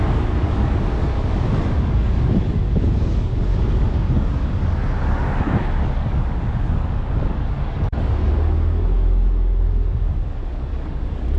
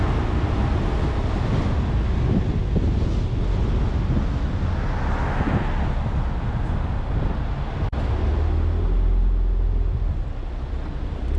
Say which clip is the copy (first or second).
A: first